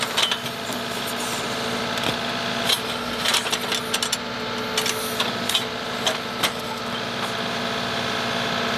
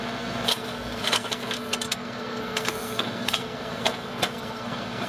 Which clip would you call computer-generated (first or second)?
second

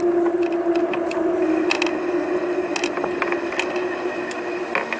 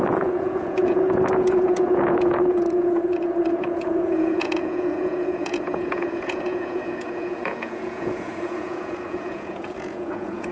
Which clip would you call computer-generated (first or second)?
second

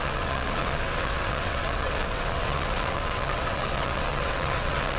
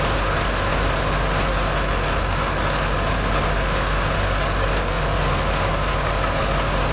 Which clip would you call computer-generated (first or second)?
first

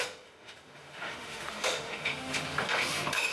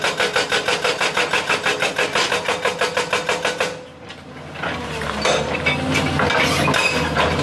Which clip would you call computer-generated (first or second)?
first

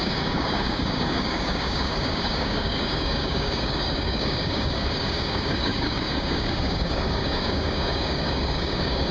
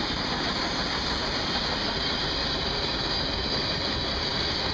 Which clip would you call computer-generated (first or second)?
first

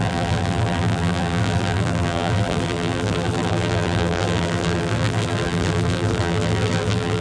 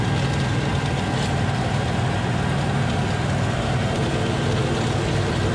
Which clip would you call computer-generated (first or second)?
first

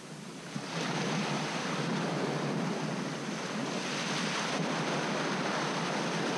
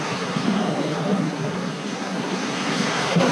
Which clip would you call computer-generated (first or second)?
second